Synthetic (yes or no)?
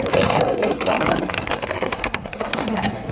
yes